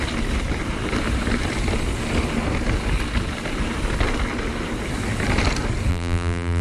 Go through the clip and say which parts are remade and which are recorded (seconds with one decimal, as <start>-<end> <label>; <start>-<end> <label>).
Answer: 0.0-5.9 recorded; 5.9-6.6 remade